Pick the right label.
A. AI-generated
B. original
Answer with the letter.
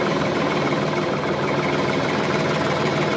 A